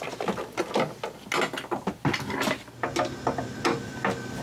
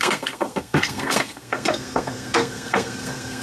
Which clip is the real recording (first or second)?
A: first